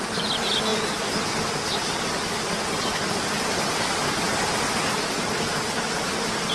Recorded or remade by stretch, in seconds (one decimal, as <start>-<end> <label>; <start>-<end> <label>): 0.0-6.5 recorded